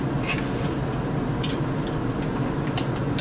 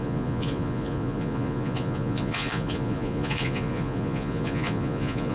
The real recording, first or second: first